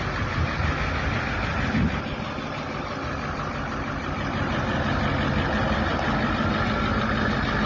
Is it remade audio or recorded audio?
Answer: recorded